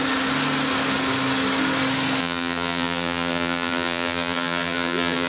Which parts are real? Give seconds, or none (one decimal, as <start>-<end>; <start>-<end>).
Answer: 0.0-2.2